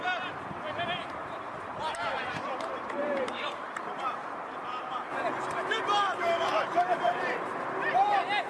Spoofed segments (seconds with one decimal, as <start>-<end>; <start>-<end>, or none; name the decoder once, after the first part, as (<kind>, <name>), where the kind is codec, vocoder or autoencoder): 0.0-5.1 (vocoder, BigVGAN v2); 5.7-6.5; 7.1-8.5